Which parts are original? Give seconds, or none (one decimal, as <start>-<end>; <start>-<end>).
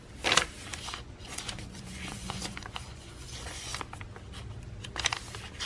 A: 0.0-0.7; 3.7-5.7